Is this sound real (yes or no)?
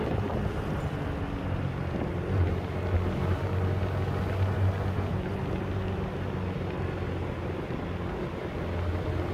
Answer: yes